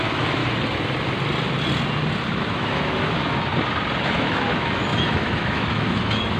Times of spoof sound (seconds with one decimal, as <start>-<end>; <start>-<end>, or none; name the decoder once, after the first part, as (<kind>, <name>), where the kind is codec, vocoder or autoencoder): 0.0-0.4 (autoencoder, DAC-VAE); 2.3-3.5; 4.1-6.4